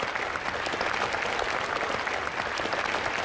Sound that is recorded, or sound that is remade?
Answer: recorded